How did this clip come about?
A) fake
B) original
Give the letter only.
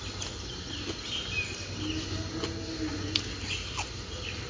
B